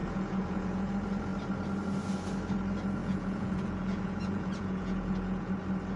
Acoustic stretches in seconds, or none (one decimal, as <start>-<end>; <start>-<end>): 0.9-3.0; 5.5-6.0